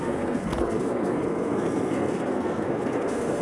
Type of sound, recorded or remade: remade